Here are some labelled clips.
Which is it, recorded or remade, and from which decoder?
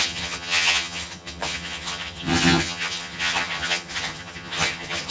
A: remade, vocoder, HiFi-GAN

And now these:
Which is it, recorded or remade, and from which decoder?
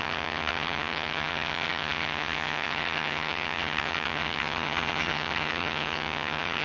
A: remade, vocoder, HiFi-GAN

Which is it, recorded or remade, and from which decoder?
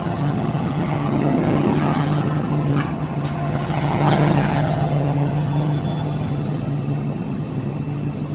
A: remade, vocoder, HiFi-GAN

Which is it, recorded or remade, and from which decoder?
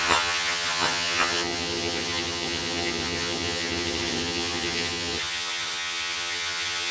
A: remade, vocoder, HiFi-GAN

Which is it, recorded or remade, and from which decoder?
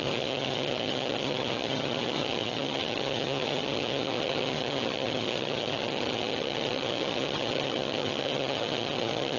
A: remade, vocoder, HiFi-GAN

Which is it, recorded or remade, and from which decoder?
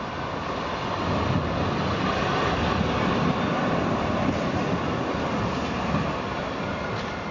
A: recorded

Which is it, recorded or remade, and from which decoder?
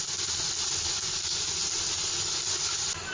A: recorded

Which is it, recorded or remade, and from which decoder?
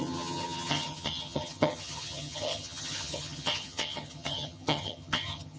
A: remade, vocoder, HiFi-GAN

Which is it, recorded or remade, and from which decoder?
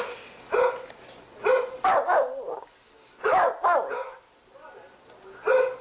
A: recorded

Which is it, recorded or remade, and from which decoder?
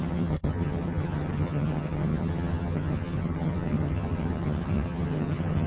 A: remade, vocoder, HiFi-GAN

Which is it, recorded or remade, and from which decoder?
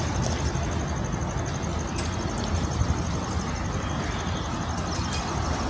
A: recorded